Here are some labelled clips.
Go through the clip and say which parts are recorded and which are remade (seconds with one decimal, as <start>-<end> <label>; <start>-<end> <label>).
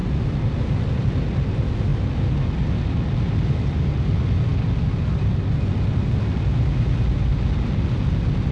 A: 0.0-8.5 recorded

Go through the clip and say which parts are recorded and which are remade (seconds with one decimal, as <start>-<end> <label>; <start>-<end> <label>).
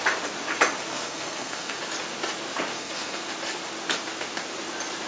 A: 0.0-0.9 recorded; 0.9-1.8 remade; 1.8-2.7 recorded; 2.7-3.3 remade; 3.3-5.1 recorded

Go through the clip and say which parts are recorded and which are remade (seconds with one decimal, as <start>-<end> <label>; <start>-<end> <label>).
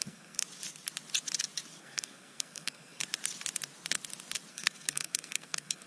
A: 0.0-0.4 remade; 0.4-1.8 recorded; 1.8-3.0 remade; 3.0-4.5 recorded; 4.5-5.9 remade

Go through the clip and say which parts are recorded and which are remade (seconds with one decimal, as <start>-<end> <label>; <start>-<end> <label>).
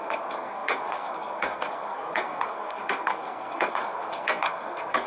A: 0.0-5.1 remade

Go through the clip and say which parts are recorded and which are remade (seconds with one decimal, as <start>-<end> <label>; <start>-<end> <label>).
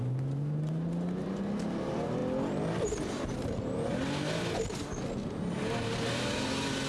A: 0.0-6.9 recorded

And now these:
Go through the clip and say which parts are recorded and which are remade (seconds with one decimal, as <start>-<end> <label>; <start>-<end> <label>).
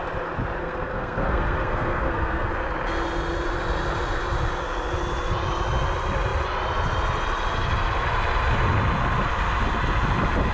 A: 0.0-0.6 recorded; 0.6-2.5 remade; 2.5-10.5 recorded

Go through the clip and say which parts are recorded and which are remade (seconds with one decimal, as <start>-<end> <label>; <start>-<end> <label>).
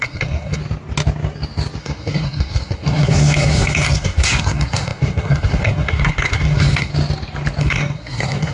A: 0.0-0.6 remade; 0.6-1.8 recorded; 1.8-6.9 remade; 6.9-7.6 recorded; 7.6-8.5 remade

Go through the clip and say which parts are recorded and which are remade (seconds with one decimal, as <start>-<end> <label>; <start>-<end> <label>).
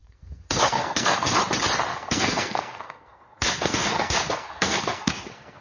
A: 0.0-1.4 remade; 1.4-1.9 recorded; 1.9-5.6 remade